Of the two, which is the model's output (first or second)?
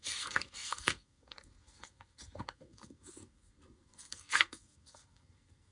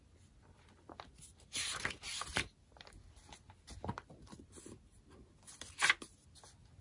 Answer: first